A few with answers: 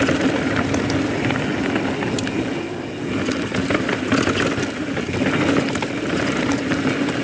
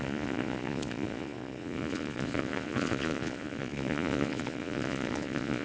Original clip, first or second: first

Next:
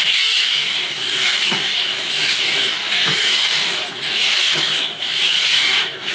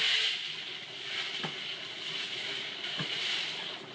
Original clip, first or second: second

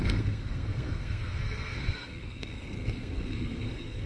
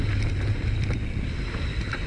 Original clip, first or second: second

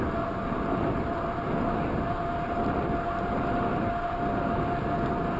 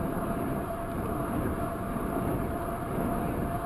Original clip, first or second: first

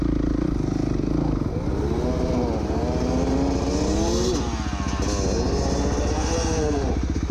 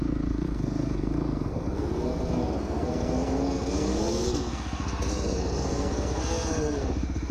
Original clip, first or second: first